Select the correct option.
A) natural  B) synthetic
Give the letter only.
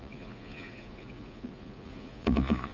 B